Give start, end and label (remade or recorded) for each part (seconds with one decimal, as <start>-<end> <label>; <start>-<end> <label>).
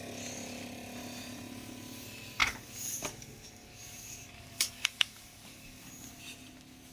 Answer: 0.0-2.4 recorded; 2.4-6.2 remade; 6.2-6.9 recorded